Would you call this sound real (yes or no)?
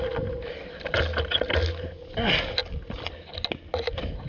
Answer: yes